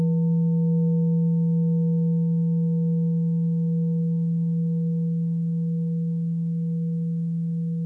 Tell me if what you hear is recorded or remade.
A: recorded